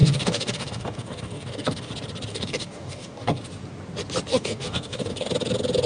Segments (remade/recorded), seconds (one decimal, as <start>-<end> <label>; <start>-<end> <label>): 0.0-1.9 remade; 1.9-2.3 recorded; 2.3-3.4 remade; 3.4-4.3 recorded; 4.3-5.3 remade; 5.3-5.9 recorded